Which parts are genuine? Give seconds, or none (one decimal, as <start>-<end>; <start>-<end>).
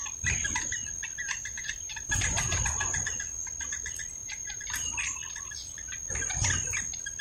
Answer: 0.0-1.2; 2.6-4.2; 4.9-7.2